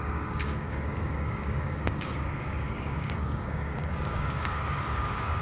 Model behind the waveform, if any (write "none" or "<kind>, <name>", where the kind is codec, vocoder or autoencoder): codec, DAC